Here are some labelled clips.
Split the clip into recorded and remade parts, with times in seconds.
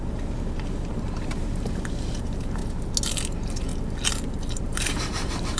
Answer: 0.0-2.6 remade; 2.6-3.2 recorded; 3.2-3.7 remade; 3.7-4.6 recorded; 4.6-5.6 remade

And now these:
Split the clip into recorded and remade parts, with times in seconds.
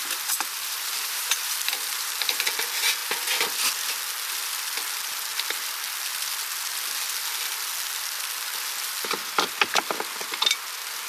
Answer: 0.0-2.4 remade; 2.4-11.1 recorded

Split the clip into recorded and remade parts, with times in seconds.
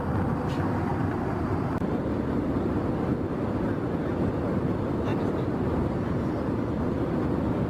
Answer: 0.0-0.9 recorded; 0.9-2.0 remade; 2.0-5.1 recorded; 5.1-6.3 remade; 6.3-7.7 recorded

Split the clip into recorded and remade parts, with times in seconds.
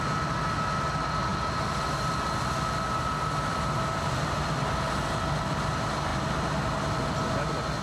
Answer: 0.0-7.8 recorded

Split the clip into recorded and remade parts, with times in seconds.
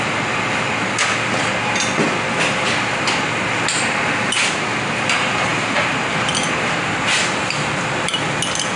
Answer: 0.0-8.8 recorded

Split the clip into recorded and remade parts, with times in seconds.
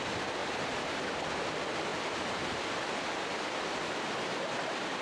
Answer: 0.0-5.0 recorded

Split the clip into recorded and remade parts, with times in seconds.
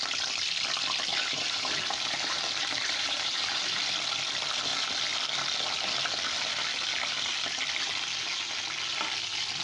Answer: 0.0-1.1 recorded; 1.1-3.6 remade; 3.6-9.6 recorded